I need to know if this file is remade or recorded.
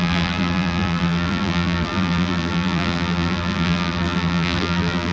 remade